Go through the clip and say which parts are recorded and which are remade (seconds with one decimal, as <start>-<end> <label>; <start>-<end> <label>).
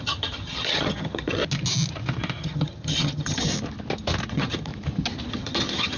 0.0-1.4 remade; 1.4-2.4 recorded; 2.4-3.5 remade; 3.5-4.3 recorded; 4.3-4.7 remade; 4.7-5.3 recorded; 5.3-6.0 remade